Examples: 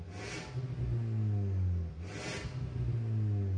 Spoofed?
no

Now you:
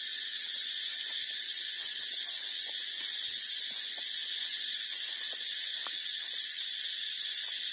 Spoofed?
yes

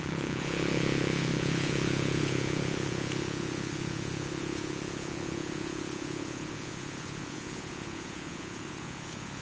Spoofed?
yes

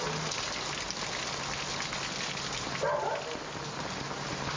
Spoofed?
no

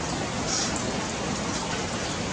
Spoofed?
no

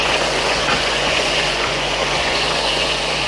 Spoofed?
yes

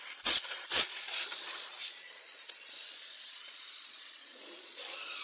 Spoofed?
yes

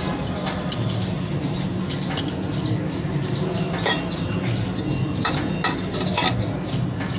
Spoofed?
no